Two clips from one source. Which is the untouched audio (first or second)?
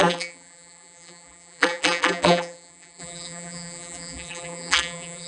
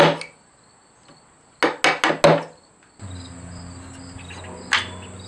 second